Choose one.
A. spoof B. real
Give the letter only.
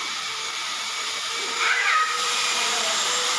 A